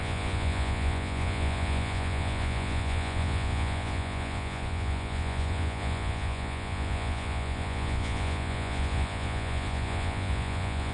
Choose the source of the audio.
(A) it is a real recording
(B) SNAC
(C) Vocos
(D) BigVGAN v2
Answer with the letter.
C